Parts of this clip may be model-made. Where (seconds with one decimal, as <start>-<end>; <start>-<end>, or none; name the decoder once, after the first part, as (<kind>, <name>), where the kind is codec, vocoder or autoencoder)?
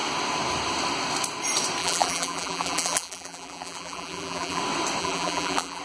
1.8-4.6 (vocoder, BigVGAN v2); 5.0-5.8